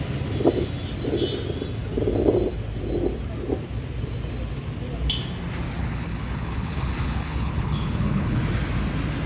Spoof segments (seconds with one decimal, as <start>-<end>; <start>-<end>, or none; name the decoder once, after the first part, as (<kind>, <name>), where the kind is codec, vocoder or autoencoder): 5.8-8.4 (codec, HILCodec)